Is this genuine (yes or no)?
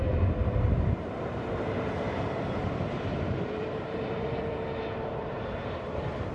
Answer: no